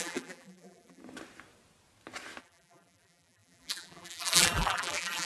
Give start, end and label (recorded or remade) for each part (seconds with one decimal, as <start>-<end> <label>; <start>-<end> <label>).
0.0-1.0 remade; 1.0-2.4 recorded; 2.4-5.3 remade